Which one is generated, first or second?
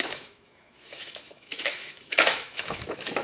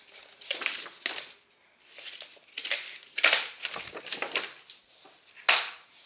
first